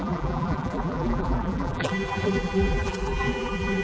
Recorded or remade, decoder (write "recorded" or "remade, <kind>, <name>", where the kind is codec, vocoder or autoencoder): remade, vocoder, BigVGAN v2